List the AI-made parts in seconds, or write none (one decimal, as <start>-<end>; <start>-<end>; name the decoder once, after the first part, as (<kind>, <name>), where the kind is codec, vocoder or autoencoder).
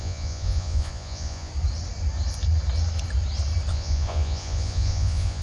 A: 0.0-1.5 (vocoder, Vocos); 3.7-5.4